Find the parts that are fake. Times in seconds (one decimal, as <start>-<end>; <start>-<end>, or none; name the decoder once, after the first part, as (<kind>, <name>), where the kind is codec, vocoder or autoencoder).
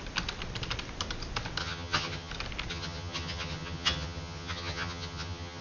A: 1.6-2.3 (vocoder, HiFi-GAN); 2.7-5.6